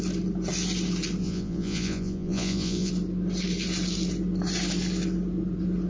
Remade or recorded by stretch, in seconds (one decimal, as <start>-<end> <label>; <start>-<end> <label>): 0.0-1.2 recorded; 1.2-2.9 remade; 2.9-5.9 recorded